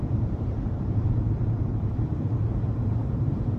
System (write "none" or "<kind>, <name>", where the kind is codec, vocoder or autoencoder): vocoder, BigVGAN v2